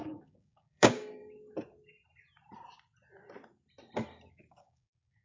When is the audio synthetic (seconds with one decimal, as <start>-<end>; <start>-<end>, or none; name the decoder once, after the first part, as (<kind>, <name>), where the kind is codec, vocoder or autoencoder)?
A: 0.0-1.2 (codec, DAC); 4.3-5.2